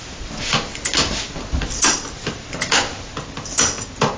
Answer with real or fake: real